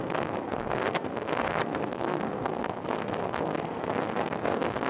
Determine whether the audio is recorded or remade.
remade